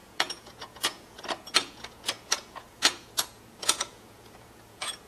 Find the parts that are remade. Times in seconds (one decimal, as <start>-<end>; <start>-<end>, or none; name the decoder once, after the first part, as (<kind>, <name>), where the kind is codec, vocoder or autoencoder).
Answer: 0.0-5.1 (vocoder, Vocos)